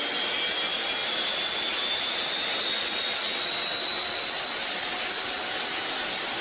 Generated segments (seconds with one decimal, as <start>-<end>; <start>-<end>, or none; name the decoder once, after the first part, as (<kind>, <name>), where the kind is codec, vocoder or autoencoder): none